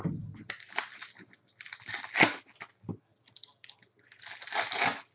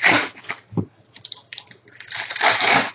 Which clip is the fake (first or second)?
second